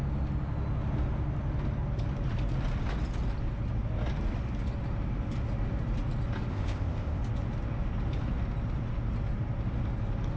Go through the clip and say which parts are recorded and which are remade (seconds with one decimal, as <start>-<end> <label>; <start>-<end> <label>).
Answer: 0.0-6.5 recorded; 6.5-7.2 remade; 7.2-10.4 recorded